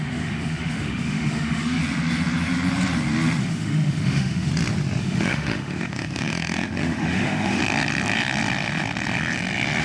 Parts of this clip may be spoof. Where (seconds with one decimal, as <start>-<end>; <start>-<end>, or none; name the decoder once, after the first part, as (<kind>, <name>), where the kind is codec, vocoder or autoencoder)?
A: 0.0-1.8 (autoencoder, DAC-VAE); 3.4-4.5; 5.0-7.6